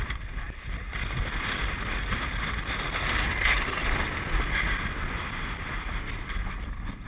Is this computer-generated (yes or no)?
no